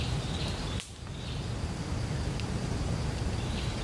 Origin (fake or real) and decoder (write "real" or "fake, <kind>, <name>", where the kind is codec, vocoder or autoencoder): real